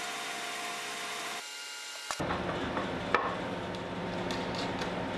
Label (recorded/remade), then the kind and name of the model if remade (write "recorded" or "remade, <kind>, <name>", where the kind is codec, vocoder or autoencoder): recorded